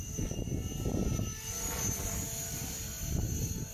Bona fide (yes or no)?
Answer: yes